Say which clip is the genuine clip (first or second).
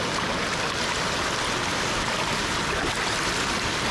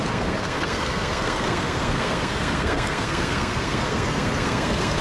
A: first